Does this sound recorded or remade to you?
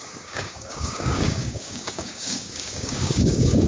remade